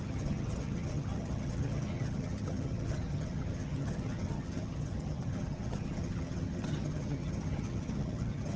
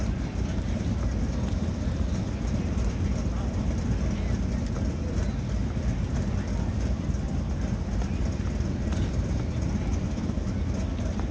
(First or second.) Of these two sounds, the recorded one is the second